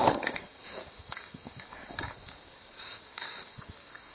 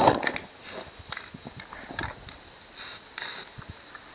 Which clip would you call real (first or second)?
second